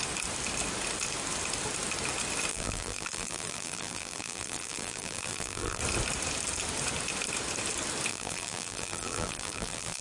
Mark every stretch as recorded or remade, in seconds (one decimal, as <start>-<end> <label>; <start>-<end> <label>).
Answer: 0.0-2.5 recorded; 2.5-5.8 remade; 5.8-8.1 recorded; 8.1-10.0 remade